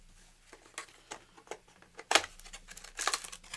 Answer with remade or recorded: recorded